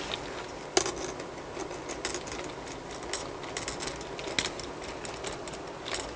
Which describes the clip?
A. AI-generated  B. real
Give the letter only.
B